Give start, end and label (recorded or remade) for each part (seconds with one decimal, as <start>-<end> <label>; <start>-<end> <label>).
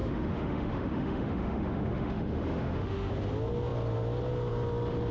0.0-3.1 remade; 3.1-5.1 recorded